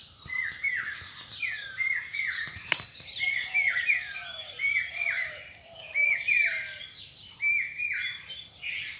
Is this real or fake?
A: real